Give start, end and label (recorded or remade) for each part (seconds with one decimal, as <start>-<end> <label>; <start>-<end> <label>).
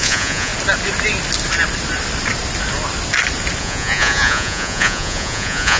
0.0-0.5 remade; 0.5-3.6 recorded; 3.6-5.8 remade